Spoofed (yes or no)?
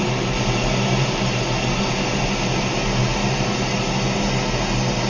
no